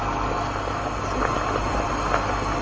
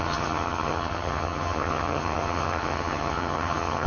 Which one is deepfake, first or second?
second